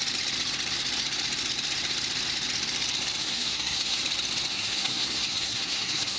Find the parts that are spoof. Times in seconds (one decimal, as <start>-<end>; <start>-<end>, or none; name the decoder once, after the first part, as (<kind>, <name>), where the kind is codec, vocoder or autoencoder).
3.2-4.0 (codec, SNAC); 4.5-6.2